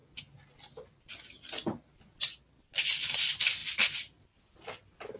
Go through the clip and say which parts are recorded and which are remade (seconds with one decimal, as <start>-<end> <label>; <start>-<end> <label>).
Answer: 0.0-5.2 recorded